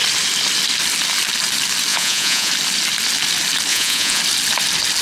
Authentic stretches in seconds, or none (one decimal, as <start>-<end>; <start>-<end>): 0.0-1.9; 2.5-3.7; 4.2-5.0